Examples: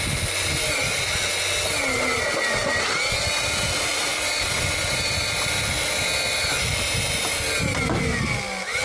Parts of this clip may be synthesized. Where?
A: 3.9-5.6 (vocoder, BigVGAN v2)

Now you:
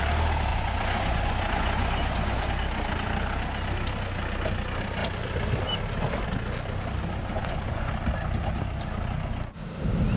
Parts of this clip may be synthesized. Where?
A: 0.5-2.5 (vocoder, Vocos); 7.4-7.9